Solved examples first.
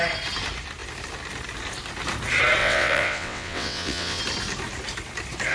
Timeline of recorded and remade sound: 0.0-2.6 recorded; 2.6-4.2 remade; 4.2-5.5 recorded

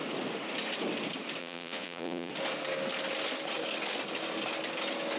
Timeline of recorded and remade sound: 0.0-1.4 recorded; 1.4-2.3 remade; 2.3-5.2 recorded

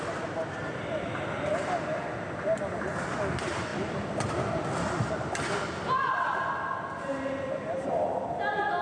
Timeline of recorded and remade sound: 0.0-8.8 recorded

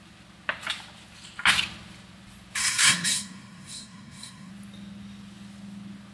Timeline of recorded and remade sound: 0.0-2.6 recorded; 2.6-4.5 remade; 4.5-6.1 recorded

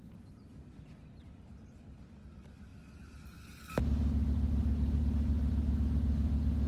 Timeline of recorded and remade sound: 0.0-6.7 recorded